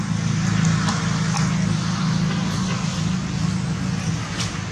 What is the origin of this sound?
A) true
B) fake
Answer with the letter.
A